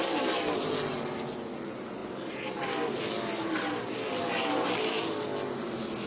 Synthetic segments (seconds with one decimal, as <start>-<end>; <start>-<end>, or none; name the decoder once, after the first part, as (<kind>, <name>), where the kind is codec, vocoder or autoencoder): none